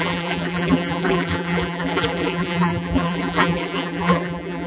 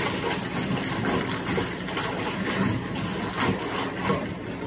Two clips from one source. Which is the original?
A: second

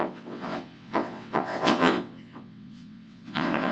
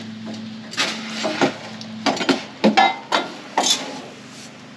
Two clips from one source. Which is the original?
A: second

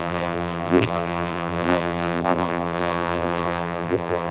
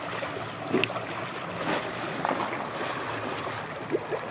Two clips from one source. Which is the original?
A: second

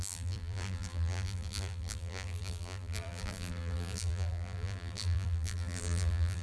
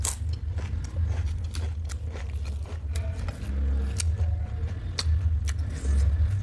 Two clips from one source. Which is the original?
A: second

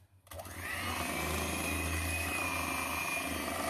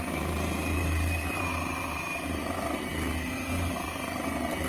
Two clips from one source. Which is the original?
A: first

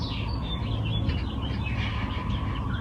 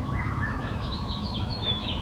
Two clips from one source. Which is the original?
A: first